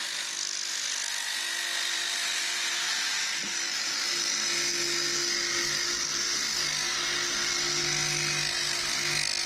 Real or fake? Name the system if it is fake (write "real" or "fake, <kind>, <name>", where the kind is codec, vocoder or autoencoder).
real